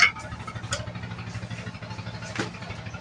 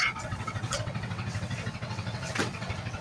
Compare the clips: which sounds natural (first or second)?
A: first